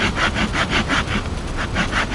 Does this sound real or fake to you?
real